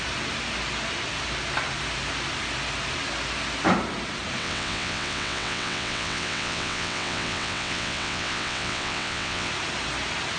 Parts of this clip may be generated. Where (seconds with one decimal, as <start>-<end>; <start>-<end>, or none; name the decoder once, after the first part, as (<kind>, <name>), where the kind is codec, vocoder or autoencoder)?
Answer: 4.4-9.5 (vocoder, WaveNeXt)